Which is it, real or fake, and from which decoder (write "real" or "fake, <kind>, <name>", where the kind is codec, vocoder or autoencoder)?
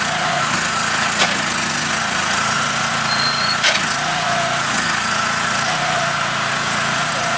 fake, vocoder, Vocos